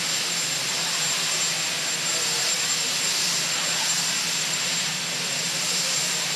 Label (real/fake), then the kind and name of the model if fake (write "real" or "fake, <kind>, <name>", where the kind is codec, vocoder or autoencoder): real